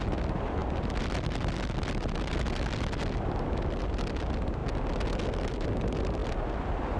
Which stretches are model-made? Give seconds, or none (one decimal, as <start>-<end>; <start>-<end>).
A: none